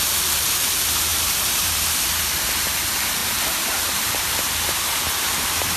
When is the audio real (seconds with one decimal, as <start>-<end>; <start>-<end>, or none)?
0.0-1.1; 2.0-3.2; 5.0-5.8